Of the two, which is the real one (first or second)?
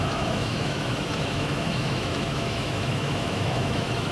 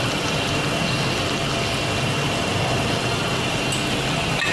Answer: second